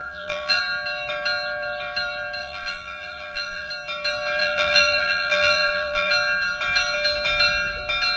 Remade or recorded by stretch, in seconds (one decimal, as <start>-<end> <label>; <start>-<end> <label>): 0.0-0.6 remade; 0.6-2.4 recorded; 2.4-3.7 remade; 3.7-4.4 recorded; 4.4-6.1 remade; 6.1-8.2 recorded